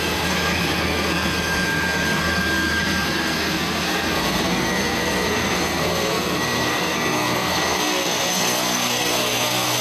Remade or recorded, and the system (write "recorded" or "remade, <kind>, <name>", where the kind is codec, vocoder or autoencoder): remade, codec, SNAC